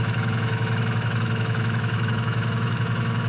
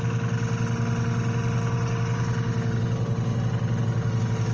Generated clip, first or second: first